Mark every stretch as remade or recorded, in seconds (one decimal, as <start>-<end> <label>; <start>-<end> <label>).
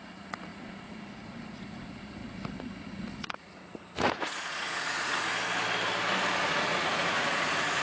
0.0-2.2 remade; 2.2-2.8 recorded; 2.8-5.3 remade; 5.3-6.4 recorded; 6.4-7.8 remade